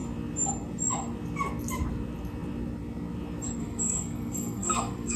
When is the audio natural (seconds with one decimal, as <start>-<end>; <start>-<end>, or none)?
0.0-3.6